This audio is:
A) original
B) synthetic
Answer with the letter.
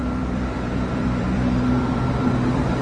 B